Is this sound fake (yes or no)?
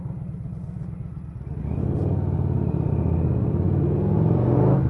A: no